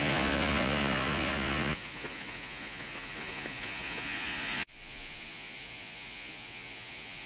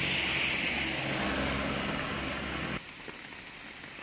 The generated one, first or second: first